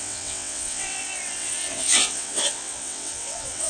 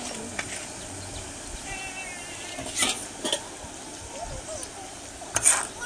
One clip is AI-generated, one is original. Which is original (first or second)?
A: second